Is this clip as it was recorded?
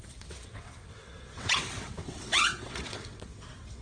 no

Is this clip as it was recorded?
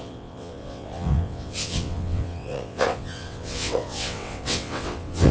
no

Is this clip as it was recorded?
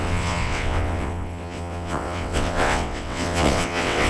no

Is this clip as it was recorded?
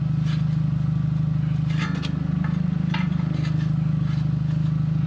yes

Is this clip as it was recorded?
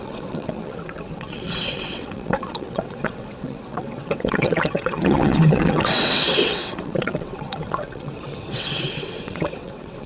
no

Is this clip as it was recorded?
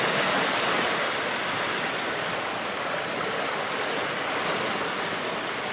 yes